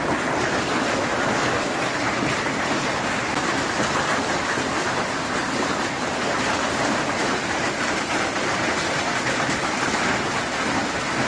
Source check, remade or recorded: recorded